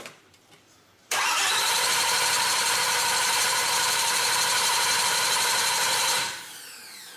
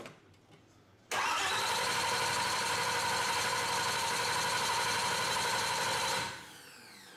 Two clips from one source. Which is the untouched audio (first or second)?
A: second